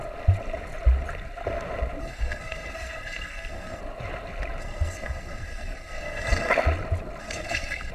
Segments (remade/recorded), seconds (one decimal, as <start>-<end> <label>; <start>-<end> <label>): 0.0-2.0 recorded; 2.0-3.8 remade; 3.8-4.6 recorded; 4.6-6.5 remade; 6.5-7.2 recorded; 7.2-7.9 remade